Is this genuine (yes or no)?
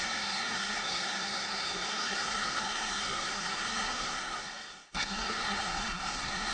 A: no